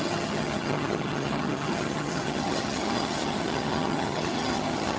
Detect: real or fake fake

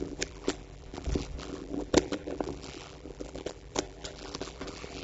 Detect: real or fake fake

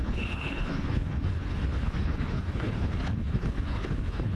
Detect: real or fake fake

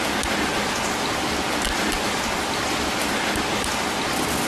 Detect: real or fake real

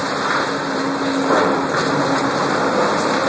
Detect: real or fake real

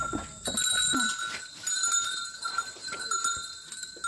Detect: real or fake real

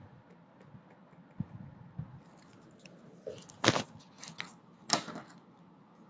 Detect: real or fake real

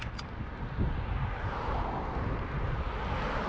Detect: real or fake real